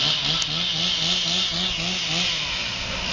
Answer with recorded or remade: recorded